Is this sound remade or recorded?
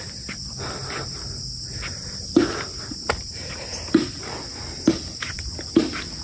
recorded